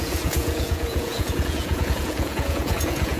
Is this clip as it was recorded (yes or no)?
no